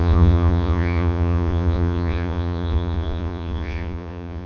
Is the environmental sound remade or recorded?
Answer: remade